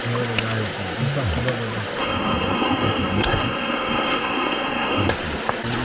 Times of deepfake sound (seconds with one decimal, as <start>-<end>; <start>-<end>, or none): 2.0-5.1